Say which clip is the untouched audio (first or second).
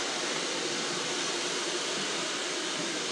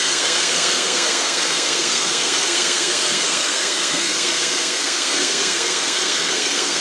first